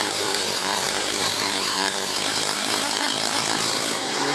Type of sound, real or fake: fake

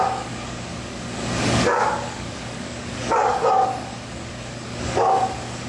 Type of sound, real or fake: fake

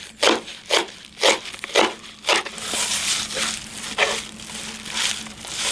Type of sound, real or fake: real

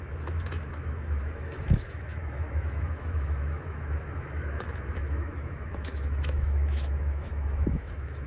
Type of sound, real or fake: fake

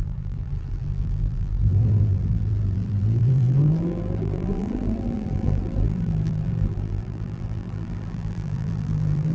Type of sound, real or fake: fake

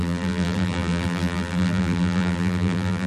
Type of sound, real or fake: fake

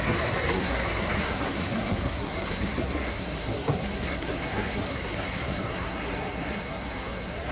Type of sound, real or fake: fake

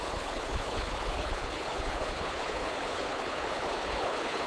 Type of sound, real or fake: fake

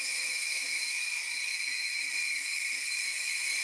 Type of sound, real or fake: fake